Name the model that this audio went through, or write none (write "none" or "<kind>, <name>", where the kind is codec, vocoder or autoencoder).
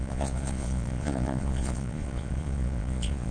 vocoder, Vocos